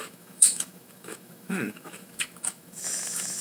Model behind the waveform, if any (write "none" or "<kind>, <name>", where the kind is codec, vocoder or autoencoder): autoencoder, DAC-VAE